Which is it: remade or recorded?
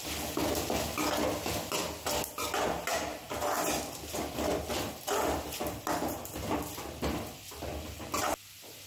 recorded